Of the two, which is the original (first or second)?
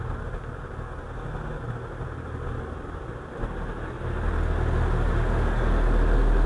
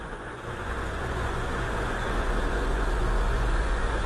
first